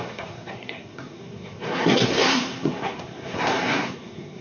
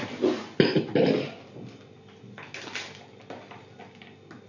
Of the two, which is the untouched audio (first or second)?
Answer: second